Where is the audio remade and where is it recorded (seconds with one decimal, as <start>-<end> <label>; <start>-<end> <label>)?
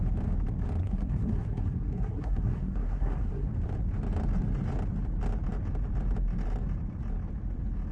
0.0-0.8 recorded; 0.8-3.5 remade; 3.5-7.9 recorded